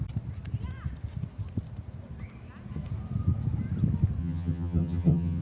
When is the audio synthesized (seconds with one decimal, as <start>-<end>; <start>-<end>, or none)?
4.2-5.4